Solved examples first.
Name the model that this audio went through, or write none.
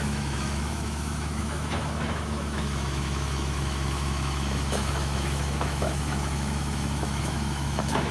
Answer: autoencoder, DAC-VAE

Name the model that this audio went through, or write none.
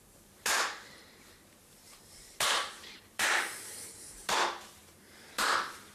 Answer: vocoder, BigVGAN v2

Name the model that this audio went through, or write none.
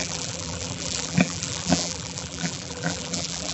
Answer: vocoder, BigVGAN v2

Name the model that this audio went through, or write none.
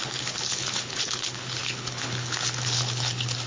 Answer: codec, HILCodec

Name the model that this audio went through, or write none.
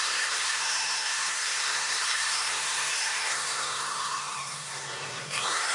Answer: codec, SNAC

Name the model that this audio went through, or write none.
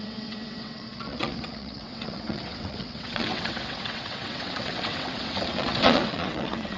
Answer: vocoder, WaveNeXt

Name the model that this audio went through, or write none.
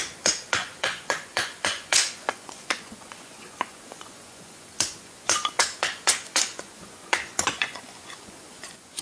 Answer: vocoder, Vocos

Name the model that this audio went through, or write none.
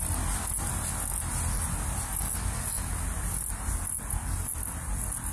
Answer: none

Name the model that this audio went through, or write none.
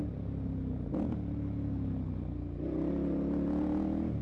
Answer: none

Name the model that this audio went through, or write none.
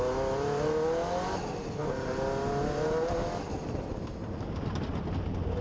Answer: none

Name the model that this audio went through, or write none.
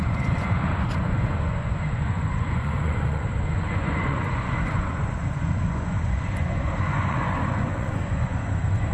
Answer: vocoder, Vocos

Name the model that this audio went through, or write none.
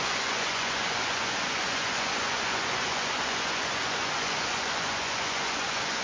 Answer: vocoder, Vocos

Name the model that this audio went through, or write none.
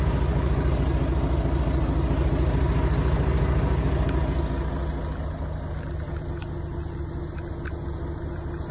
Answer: none